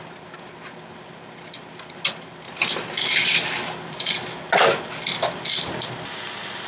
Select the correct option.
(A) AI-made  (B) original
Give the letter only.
B